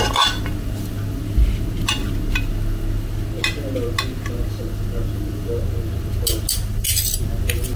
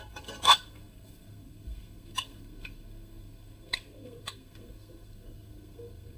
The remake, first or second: second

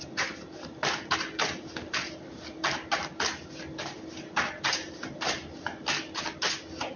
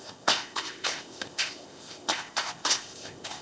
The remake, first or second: second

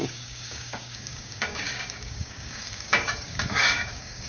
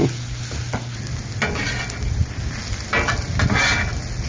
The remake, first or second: first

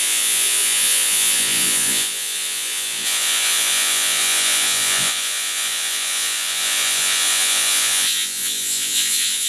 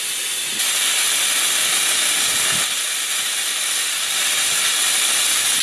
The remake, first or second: first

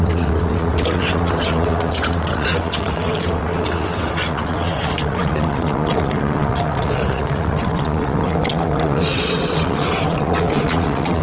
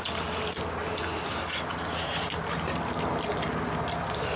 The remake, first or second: first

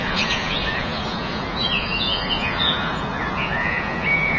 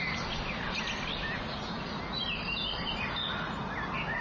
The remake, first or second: first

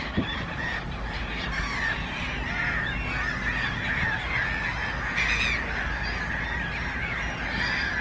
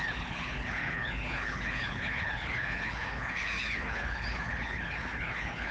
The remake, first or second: second